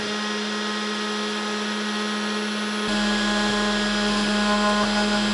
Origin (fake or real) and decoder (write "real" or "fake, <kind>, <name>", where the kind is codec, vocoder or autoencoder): real